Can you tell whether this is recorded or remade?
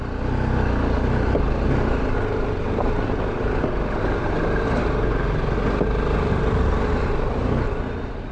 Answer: recorded